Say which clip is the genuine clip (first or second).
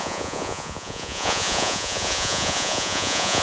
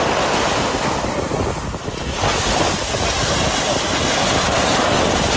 second